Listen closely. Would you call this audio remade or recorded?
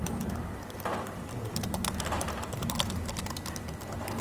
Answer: recorded